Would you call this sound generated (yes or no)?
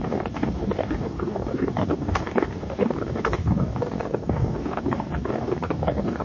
yes